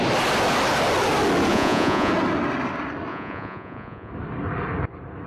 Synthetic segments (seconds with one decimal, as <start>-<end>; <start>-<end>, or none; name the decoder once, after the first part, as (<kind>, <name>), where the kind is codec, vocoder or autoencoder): 1.5-2.1 (vocoder, Vocos); 3.1-4.1